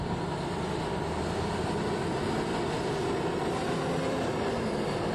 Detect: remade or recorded recorded